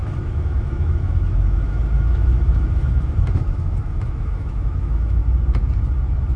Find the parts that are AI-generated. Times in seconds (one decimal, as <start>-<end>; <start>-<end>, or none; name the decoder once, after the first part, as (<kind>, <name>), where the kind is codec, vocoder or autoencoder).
0.0-5.2 (autoencoder, DAC-VAE)